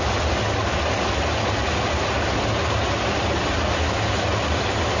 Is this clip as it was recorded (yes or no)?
yes